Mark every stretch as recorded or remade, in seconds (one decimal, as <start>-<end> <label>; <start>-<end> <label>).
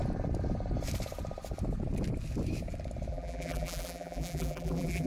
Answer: 0.0-3.1 recorded; 3.1-5.1 remade